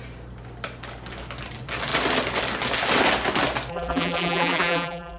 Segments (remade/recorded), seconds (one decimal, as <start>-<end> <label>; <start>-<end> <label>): 0.0-3.7 recorded; 3.7-5.2 remade